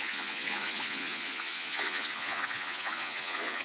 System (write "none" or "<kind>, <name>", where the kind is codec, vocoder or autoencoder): vocoder, Vocos